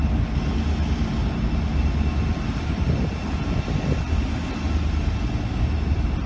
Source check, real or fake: real